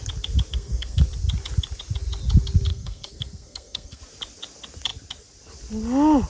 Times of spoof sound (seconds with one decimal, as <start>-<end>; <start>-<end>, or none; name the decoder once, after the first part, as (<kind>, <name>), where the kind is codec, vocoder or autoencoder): 0.5-1.0 (codec, SNAC); 2.7-4.0